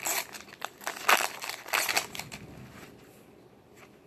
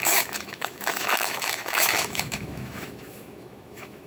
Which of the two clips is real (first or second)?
first